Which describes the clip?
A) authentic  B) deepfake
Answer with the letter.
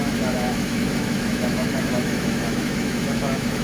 B